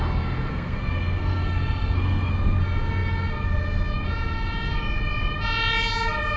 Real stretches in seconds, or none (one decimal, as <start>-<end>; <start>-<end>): 0.0-0.5; 2.3-6.4